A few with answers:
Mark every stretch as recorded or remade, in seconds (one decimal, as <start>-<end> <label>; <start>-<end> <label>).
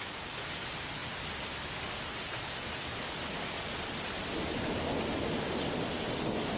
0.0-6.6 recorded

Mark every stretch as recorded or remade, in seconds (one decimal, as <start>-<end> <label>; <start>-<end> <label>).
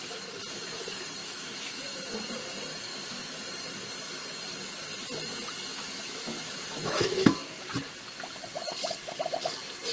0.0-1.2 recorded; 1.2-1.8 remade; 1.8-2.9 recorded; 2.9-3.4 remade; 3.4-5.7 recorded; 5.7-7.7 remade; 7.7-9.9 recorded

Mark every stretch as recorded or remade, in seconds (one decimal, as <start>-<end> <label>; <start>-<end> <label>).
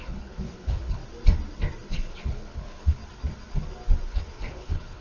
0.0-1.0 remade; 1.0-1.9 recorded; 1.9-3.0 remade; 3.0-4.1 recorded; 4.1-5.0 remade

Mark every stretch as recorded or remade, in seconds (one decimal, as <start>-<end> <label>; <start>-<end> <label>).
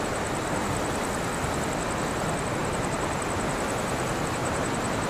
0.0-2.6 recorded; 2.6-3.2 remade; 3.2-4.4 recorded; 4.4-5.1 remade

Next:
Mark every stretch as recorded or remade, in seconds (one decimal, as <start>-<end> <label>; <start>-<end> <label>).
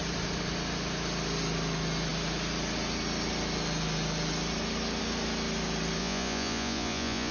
0.0-6.0 recorded; 6.0-7.3 remade